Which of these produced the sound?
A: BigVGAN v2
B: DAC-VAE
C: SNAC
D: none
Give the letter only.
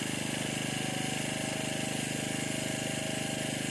D